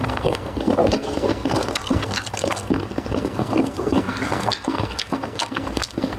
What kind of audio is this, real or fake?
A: fake